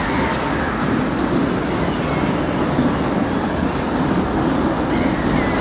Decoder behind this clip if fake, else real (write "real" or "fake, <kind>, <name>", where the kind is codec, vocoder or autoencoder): real